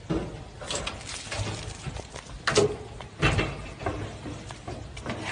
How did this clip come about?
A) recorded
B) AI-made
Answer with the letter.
A